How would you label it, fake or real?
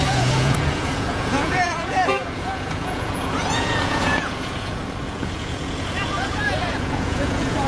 fake